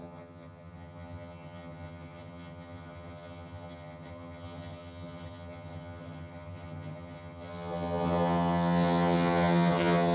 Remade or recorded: remade